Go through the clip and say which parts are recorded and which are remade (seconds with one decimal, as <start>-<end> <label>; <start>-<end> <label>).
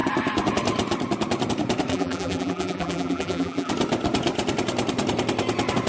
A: 0.0-1.9 recorded; 1.9-3.7 remade; 3.7-5.9 recorded